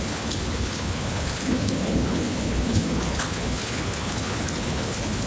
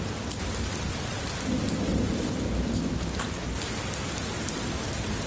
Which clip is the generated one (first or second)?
first